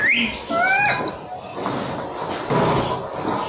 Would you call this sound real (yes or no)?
yes